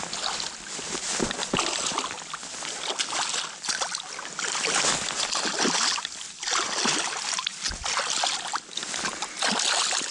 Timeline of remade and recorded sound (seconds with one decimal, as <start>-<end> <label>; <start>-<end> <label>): 0.0-10.1 recorded